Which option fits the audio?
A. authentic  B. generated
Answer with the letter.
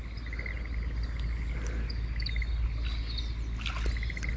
A